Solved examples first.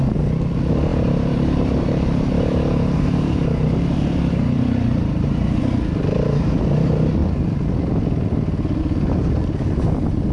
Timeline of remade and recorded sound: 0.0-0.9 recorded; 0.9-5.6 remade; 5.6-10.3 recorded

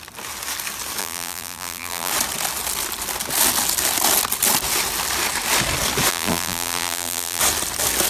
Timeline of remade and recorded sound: 0.0-1.0 recorded; 1.0-2.1 remade; 2.1-6.1 recorded; 6.1-7.4 remade; 7.4-8.1 recorded

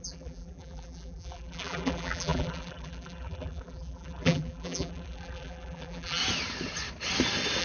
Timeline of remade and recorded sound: 0.0-6.2 remade; 6.2-7.6 recorded

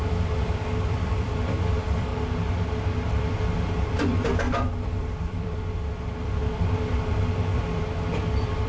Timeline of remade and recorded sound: 0.0-2.1 remade; 2.1-3.1 recorded; 3.1-8.7 remade